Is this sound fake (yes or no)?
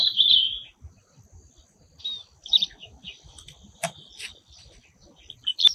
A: no